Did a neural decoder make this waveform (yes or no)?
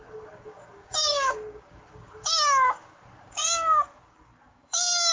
yes